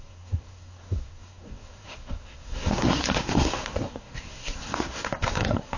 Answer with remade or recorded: remade